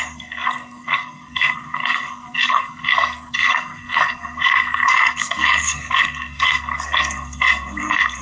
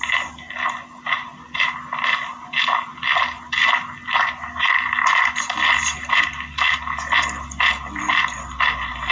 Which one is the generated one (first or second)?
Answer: first